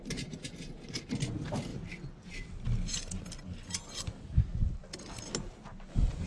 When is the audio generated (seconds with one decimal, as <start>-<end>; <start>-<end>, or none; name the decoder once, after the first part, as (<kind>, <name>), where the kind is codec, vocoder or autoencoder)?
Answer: none